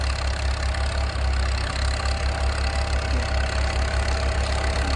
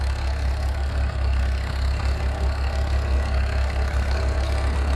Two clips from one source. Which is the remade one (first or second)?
second